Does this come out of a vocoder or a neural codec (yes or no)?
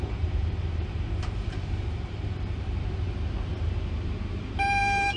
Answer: yes